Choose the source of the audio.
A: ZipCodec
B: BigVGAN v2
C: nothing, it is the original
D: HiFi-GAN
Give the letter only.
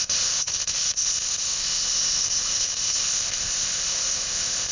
A